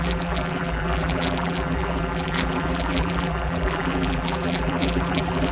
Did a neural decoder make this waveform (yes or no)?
yes